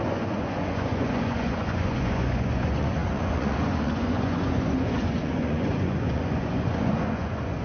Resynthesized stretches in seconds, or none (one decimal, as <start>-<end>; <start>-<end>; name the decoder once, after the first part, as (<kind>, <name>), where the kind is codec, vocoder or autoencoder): 0.0-7.6 (vocoder, Vocos)